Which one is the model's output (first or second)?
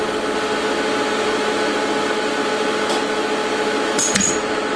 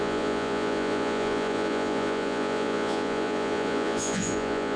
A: second